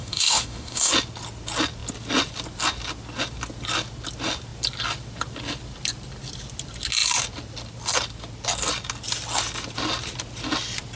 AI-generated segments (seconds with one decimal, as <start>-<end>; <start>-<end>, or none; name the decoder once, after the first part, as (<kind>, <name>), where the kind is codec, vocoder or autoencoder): 0.0-0.9 (autoencoder, DAC-VAE)